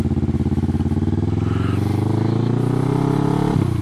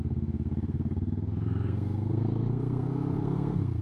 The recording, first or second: first